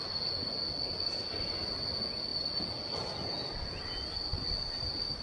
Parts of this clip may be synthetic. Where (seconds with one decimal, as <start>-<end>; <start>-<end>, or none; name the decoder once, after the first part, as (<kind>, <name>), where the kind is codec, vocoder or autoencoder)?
none